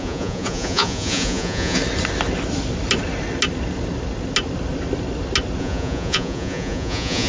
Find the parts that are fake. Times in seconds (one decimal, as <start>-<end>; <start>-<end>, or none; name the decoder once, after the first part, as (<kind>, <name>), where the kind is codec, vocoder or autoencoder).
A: 0.0-1.8 (vocoder, Vocos); 5.6-7.3